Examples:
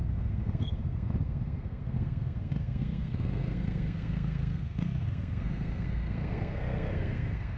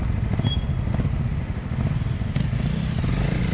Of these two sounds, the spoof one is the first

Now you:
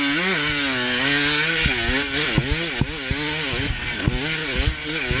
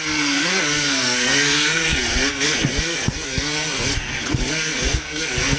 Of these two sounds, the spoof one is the second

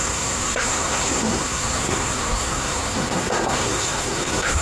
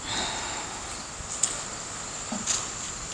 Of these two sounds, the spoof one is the first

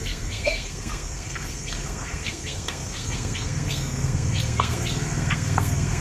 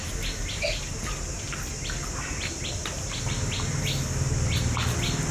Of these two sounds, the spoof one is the first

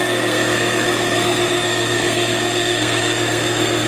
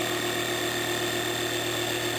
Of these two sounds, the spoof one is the first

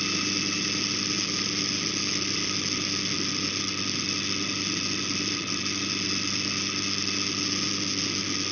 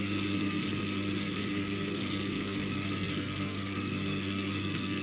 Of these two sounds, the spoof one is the second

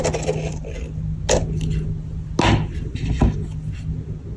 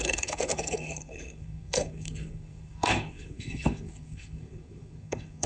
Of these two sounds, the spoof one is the second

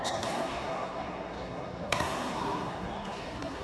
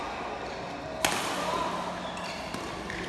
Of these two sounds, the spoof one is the first